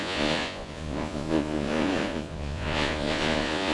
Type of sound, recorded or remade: remade